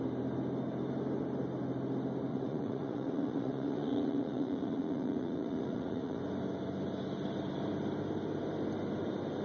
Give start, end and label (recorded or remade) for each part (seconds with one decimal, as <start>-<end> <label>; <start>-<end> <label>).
0.0-2.3 recorded; 2.3-6.2 remade; 6.2-9.4 recorded